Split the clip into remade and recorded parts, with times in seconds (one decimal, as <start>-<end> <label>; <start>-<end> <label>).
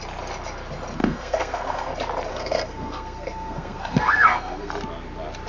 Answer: 0.0-1.0 recorded; 1.0-1.9 remade; 1.9-2.3 recorded; 2.3-4.7 remade; 4.7-5.5 recorded